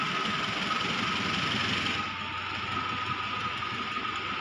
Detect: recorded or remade recorded